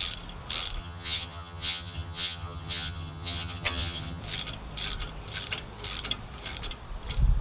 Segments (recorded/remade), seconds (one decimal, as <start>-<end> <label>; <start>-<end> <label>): 0.0-0.8 recorded; 0.8-4.2 remade; 4.2-7.4 recorded